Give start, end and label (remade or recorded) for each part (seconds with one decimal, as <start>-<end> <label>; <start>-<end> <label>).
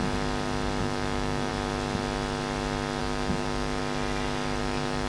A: 0.0-0.8 recorded; 0.8-1.5 remade; 1.5-3.0 recorded; 3.0-3.8 remade; 3.8-4.6 recorded; 4.6-5.1 remade